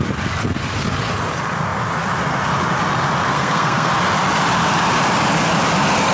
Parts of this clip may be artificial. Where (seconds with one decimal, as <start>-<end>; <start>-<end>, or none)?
3.3-3.9